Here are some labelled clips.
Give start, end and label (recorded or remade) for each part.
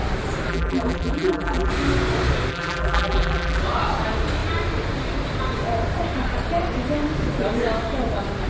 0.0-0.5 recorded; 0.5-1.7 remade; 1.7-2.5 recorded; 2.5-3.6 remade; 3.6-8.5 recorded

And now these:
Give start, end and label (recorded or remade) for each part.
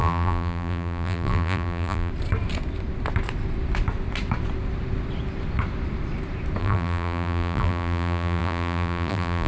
0.0-2.1 remade; 2.1-6.6 recorded; 6.6-9.5 remade